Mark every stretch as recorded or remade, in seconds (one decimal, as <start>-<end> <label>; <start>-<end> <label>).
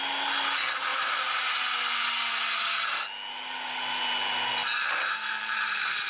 0.0-6.1 recorded